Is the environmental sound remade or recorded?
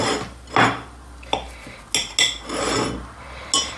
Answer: recorded